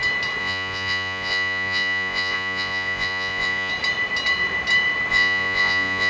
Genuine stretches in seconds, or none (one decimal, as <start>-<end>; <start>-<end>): 0.0-0.4; 3.7-5.1